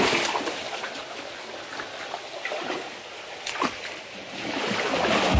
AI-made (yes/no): no